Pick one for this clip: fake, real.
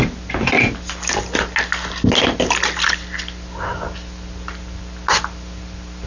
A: real